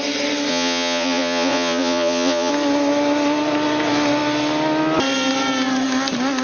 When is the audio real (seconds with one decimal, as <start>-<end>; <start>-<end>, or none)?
0.0-0.5; 2.5-6.4